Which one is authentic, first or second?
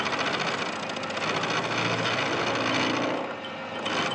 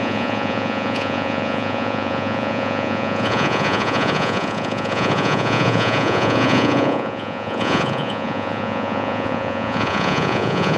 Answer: first